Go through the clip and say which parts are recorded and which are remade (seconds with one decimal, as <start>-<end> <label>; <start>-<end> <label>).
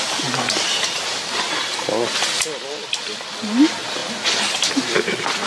0.0-5.5 recorded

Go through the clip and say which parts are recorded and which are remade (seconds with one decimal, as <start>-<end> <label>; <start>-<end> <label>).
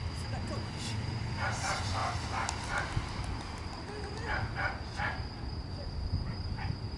0.0-7.0 recorded